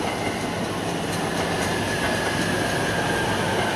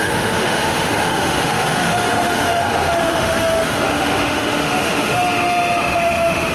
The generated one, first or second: second